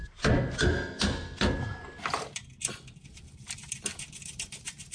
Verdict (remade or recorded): recorded